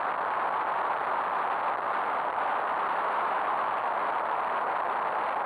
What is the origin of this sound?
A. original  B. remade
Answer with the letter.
A